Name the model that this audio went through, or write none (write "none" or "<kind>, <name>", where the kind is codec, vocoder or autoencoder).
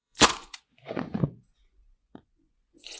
vocoder, Vocos